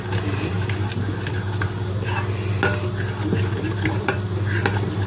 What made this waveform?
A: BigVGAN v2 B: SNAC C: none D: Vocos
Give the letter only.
C